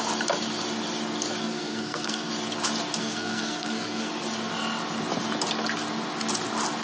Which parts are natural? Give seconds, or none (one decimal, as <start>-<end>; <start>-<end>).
0.0-1.4; 2.3-3.0; 4.1-6.8